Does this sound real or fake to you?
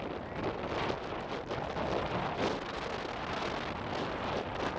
real